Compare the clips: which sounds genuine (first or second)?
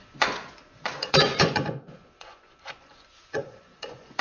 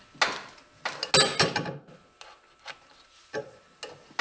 second